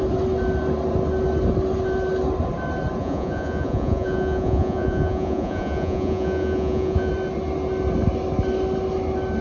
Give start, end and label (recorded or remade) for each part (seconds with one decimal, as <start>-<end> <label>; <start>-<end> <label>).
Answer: 0.0-3.0 recorded; 3.0-7.1 remade; 7.1-9.4 recorded